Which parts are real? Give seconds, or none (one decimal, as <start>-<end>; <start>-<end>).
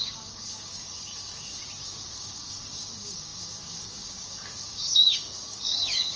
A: 1.5-2.2